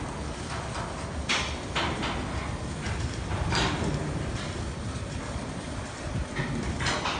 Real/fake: real